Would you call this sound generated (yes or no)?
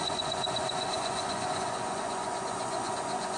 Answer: yes